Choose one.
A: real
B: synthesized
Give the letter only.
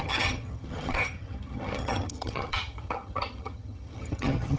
B